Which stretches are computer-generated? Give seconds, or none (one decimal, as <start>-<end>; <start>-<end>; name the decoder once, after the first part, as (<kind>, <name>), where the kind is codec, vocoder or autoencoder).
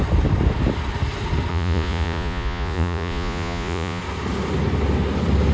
1.5-4.0 (vocoder, Vocos)